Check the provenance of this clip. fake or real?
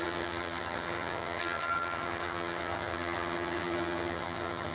fake